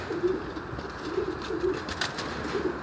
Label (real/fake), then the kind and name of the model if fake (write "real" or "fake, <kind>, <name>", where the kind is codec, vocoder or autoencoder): real